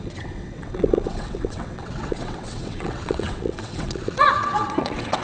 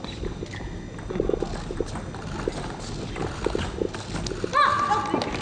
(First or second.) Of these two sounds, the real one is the second